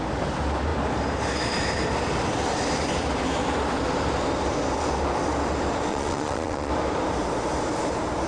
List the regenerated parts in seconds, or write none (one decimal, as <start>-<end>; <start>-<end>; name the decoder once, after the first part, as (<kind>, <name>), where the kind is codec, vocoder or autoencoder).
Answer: 5.9-6.7 (vocoder, Vocos)